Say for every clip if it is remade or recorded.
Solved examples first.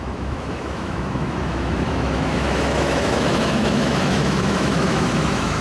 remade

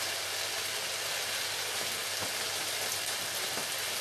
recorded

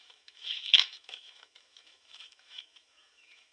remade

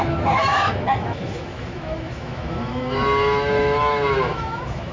remade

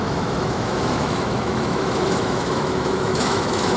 remade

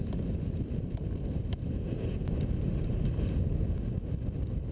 recorded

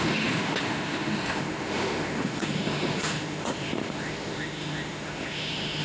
remade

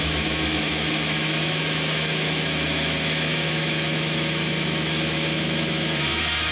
remade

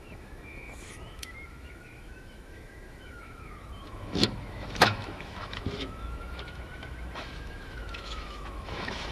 remade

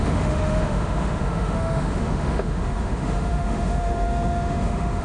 remade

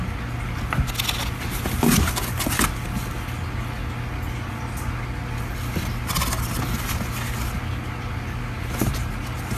recorded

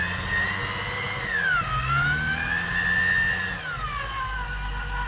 recorded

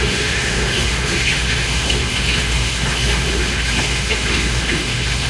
remade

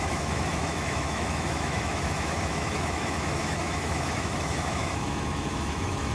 remade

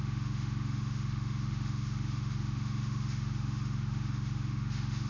remade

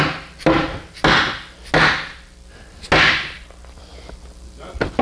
recorded